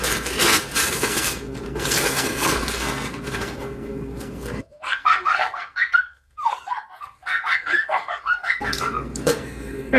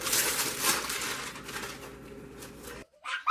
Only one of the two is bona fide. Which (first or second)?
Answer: second